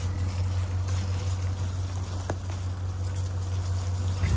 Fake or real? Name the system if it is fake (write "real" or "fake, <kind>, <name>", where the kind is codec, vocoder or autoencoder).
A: real